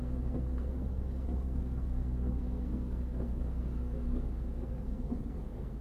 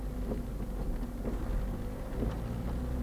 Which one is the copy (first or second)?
first